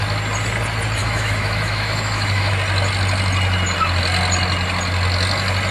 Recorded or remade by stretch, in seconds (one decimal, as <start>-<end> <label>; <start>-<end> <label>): 0.0-1.0 recorded; 1.0-2.5 remade; 2.5-5.7 recorded